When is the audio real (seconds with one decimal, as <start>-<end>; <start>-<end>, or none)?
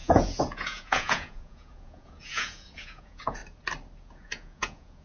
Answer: 3.4-4.0